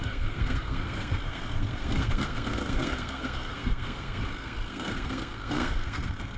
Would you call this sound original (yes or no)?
no